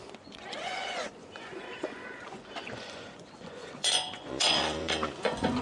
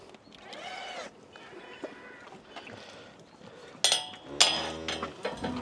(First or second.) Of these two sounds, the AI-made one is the first